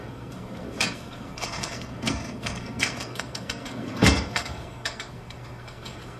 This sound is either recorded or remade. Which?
remade